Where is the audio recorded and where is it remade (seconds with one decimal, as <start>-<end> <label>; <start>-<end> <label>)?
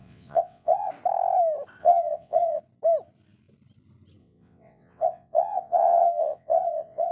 0.0-0.9 remade; 0.9-1.8 recorded; 1.8-2.6 remade; 2.6-4.2 recorded; 4.2-7.1 remade